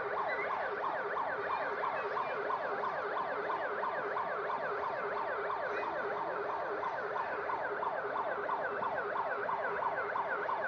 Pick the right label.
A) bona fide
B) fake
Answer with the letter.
A